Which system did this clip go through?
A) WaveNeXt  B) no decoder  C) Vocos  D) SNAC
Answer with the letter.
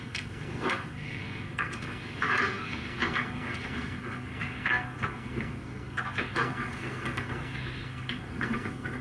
D